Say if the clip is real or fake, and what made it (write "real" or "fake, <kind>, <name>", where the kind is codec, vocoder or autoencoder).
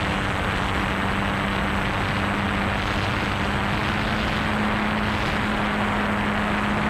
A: real